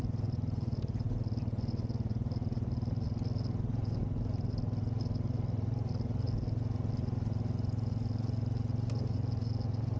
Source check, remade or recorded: recorded